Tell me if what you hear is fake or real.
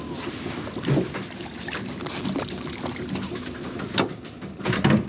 real